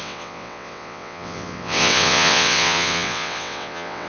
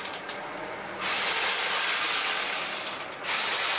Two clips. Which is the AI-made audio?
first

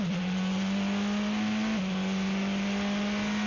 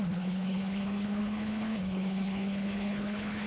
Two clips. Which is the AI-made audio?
second